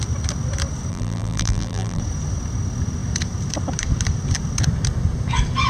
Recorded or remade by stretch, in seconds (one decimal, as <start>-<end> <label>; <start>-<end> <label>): 0.0-0.9 recorded; 0.9-2.0 remade; 2.0-5.7 recorded